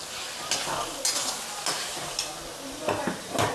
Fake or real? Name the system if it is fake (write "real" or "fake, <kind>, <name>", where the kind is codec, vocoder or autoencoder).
real